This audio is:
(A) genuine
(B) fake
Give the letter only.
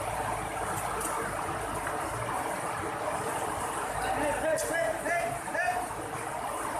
A